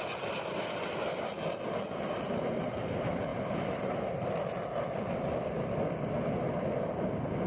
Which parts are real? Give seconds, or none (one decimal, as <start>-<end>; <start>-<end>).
0.0-3.3; 5.9-7.5

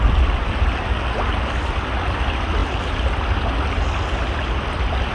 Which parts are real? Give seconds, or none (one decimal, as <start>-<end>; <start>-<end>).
0.0-5.1

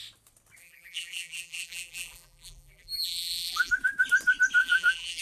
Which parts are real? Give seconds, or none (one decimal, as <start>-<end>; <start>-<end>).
0.0-0.6; 3.7-4.6

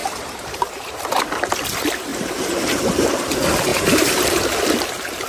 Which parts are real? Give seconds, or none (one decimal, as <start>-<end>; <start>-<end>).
1.0-2.1; 2.8-3.7; 4.4-5.3

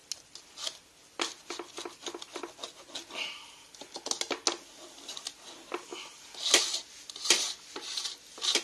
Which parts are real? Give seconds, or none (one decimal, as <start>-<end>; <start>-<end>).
0.0-8.6

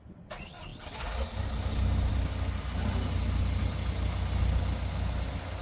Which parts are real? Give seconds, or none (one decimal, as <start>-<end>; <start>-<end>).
0.0-5.6

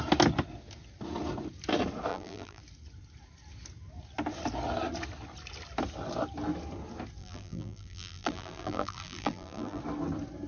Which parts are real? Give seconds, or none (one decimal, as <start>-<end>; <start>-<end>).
0.0-2.1; 2.6-7.2; 9.8-10.5

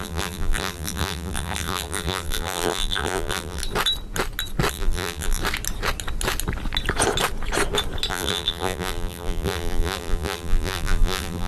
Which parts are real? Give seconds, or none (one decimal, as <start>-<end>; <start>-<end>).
3.6-4.7; 5.4-8.1